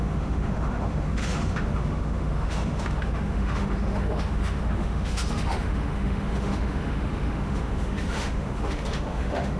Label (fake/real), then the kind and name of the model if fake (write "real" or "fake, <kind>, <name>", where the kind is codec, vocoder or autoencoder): fake, autoencoder, DAC-VAE